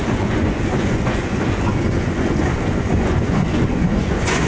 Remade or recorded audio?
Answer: remade